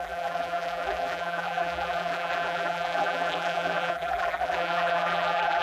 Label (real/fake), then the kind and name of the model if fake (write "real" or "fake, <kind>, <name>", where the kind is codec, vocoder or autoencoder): fake, vocoder, BigVGAN v2